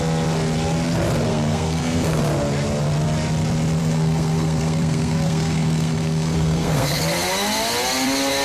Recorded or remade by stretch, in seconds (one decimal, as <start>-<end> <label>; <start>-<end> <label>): 0.0-1.3 recorded; 1.3-2.2 remade; 2.2-3.8 recorded; 3.8-7.0 remade; 7.0-8.4 recorded